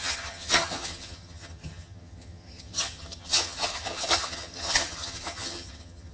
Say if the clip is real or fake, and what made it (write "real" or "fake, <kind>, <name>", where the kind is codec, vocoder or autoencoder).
fake, vocoder, HiFi-GAN